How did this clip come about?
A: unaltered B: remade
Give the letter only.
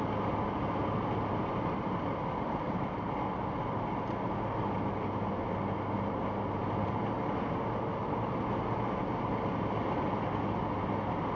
A